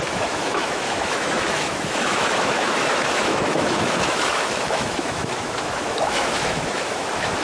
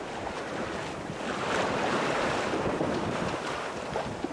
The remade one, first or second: first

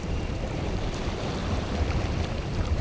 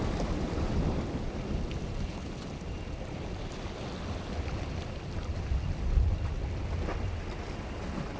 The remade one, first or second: first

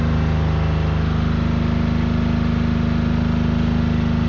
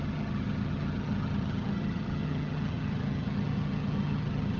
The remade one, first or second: second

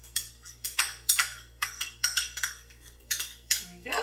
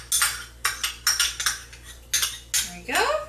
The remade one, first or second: first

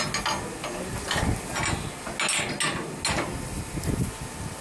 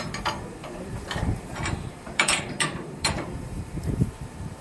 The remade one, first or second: second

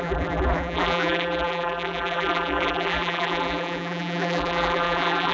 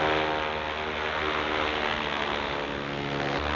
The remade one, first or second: first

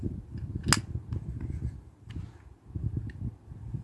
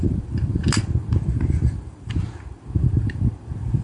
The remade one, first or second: second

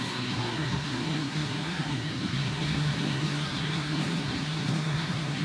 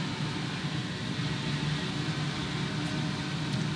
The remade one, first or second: first